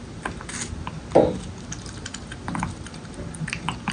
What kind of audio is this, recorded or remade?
recorded